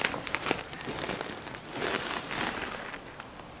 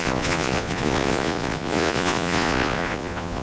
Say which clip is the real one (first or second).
first